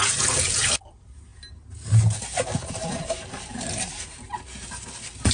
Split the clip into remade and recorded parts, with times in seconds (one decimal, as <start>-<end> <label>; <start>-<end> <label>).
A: 0.0-0.7 remade; 0.7-5.3 recorded